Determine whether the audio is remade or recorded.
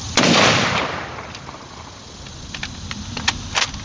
recorded